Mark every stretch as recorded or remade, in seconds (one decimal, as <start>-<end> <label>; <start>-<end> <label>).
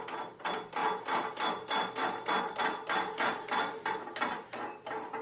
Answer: 0.0-5.2 recorded